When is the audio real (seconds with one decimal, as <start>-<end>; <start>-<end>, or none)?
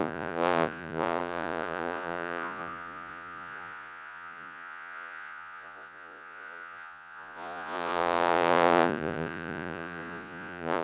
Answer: none